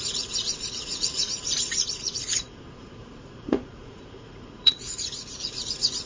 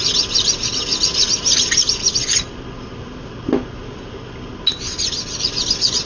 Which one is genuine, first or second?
second